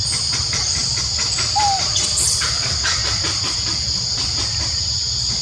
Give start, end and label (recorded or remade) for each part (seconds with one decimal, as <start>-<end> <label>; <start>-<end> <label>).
0.0-5.4 recorded